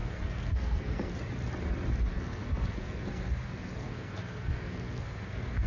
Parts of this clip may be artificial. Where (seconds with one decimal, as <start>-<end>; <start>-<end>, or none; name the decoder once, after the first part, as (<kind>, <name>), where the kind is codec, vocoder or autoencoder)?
0.0-1.1 (codec, SNAC); 2.1-5.7